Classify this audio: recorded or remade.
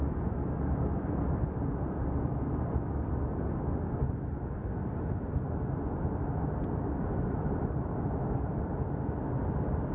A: remade